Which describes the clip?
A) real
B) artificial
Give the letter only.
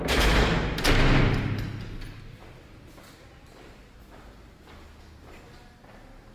A